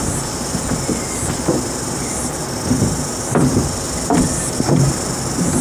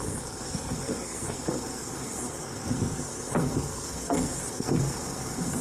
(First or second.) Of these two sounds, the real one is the first